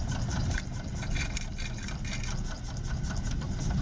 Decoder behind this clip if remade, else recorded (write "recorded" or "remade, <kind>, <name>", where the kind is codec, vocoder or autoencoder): recorded